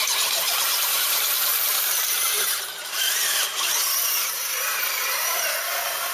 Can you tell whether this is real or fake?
fake